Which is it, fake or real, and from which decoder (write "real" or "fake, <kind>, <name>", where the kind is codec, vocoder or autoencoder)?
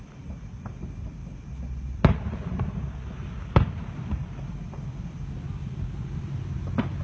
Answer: real